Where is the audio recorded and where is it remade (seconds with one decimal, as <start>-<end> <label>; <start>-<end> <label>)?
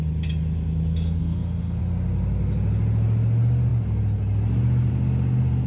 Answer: 0.0-1.2 recorded; 1.2-1.8 remade; 1.8-5.7 recorded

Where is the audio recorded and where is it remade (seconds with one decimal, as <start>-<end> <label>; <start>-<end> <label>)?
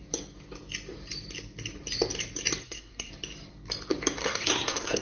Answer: 0.0-2.6 recorded; 2.6-3.1 remade; 3.1-4.2 recorded; 4.2-5.0 remade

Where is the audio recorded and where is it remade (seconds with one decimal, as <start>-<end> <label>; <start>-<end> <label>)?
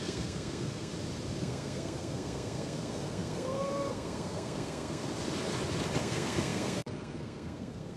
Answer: 0.0-0.9 remade; 0.9-1.4 recorded; 1.4-5.0 remade; 5.0-6.0 recorded; 6.0-8.0 remade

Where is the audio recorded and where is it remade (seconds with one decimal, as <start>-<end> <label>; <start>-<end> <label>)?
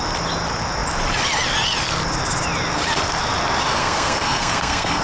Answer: 0.0-3.8 recorded; 3.8-5.0 remade